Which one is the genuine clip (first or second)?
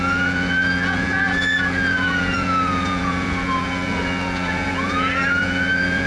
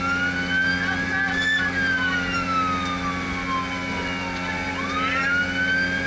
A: second